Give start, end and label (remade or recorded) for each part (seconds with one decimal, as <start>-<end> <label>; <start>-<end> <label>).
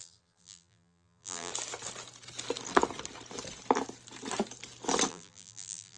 0.0-1.5 remade; 1.5-5.1 recorded; 5.1-6.0 remade